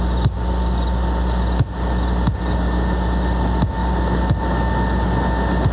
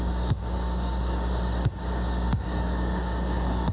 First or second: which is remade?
second